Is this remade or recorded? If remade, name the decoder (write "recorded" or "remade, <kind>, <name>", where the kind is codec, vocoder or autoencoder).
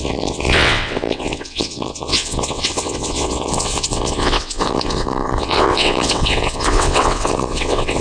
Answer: remade, vocoder, WaveNeXt